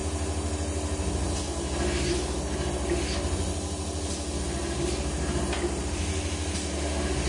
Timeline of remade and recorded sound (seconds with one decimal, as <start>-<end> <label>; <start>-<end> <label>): 0.0-7.3 recorded